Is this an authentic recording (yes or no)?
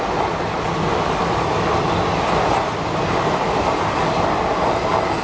yes